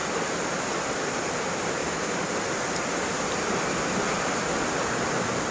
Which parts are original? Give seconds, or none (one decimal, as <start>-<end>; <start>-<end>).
0.0-5.5